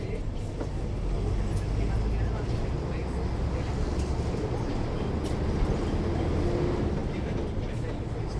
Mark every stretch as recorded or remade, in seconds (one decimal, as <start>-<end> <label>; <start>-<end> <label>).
0.0-8.4 recorded